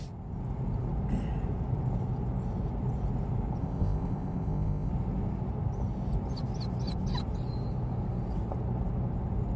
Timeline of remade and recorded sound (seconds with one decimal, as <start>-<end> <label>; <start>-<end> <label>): 0.0-3.6 recorded; 3.6-4.9 remade; 4.9-9.6 recorded